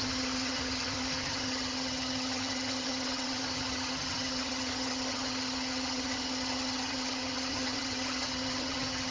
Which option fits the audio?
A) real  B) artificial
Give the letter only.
B